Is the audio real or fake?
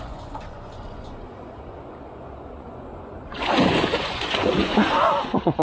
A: fake